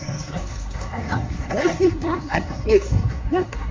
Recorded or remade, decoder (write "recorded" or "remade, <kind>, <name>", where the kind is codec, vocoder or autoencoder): remade, codec, SNAC